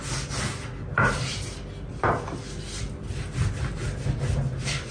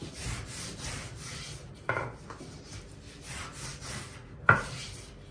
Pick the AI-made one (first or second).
second